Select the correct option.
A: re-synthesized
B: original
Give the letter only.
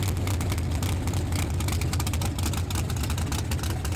B